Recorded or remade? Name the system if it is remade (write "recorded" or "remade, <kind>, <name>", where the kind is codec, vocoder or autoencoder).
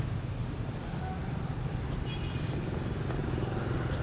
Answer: recorded